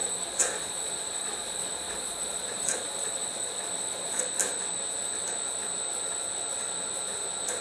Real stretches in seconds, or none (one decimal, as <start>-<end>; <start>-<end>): 4.2-7.6